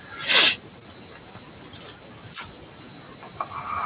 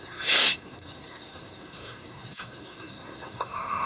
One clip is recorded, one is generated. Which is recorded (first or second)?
first